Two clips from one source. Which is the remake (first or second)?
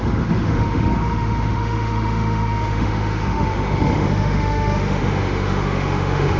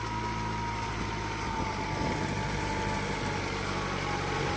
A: first